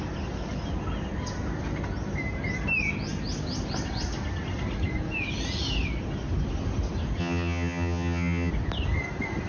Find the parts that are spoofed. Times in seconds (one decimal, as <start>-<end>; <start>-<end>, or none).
7.2-8.5